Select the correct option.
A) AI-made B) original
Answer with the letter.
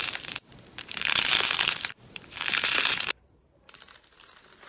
A